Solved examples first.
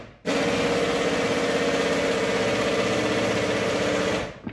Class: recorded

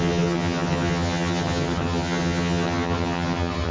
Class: remade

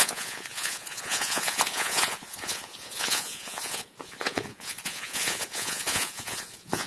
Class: remade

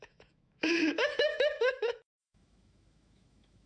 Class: remade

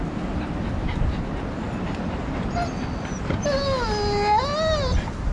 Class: recorded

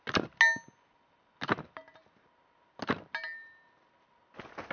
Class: recorded